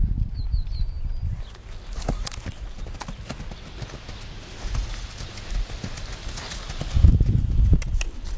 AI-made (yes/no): no